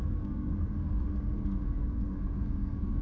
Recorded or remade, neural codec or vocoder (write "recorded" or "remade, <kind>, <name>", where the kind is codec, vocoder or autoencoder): remade, codec, SNAC